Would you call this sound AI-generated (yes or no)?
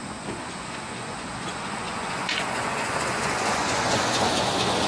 yes